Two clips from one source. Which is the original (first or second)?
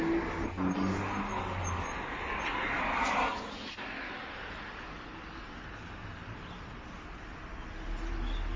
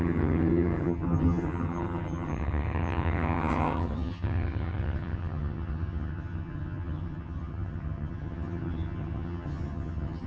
first